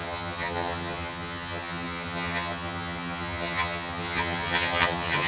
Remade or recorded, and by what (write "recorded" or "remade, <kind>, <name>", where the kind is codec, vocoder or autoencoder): remade, vocoder, HiFi-GAN